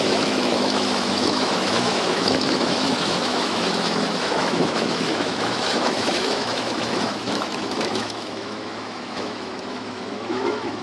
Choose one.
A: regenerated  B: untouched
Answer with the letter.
A